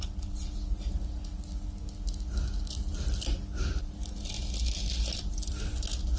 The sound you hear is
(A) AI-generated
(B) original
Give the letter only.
B